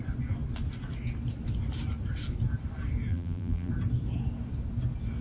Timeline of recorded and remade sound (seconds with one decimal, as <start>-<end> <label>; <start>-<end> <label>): 0.0-3.1 recorded; 3.1-3.7 remade; 3.7-5.2 recorded